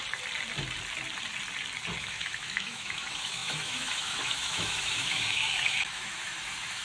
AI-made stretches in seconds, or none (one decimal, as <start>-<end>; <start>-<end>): 2.0-6.8